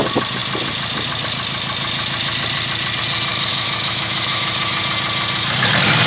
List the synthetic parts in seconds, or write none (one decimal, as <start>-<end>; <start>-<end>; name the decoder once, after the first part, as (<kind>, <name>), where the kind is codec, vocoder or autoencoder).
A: 3.3-4.8 (autoencoder, DAC-VAE)